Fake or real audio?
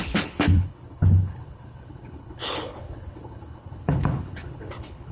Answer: fake